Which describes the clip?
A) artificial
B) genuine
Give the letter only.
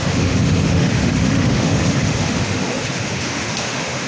A